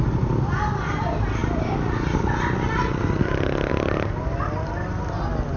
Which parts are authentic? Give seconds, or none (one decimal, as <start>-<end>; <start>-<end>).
0.0-5.6